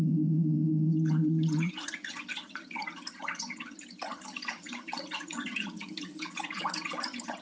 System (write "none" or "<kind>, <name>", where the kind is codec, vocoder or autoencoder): vocoder, HiFi-GAN